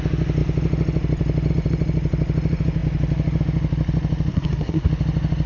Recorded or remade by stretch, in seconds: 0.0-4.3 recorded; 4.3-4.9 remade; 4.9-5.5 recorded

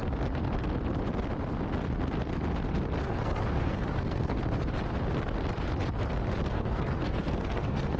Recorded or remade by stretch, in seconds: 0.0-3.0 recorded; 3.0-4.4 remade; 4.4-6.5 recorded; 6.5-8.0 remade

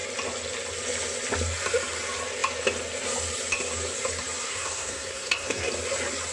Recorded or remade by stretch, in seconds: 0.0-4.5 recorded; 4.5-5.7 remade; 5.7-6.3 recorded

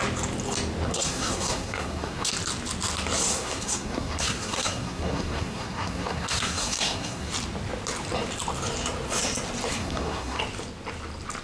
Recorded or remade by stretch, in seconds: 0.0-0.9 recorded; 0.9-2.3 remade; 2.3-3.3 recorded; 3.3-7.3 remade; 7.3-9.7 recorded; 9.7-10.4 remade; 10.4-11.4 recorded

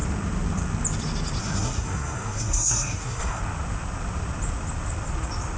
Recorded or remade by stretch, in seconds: 0.0-1.4 recorded; 1.4-3.4 remade; 3.4-5.6 recorded

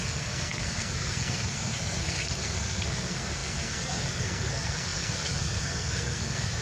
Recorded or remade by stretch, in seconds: 0.0-6.6 remade

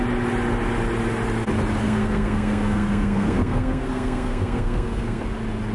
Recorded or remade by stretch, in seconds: 0.0-1.8 recorded; 1.8-5.2 remade; 5.2-5.7 recorded

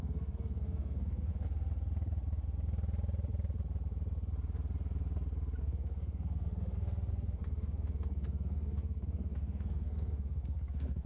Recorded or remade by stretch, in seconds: 0.0-1.3 remade; 1.3-5.6 recorded; 5.6-11.1 remade